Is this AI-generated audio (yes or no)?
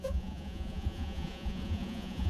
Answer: yes